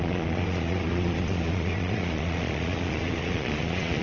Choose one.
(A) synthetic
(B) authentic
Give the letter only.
A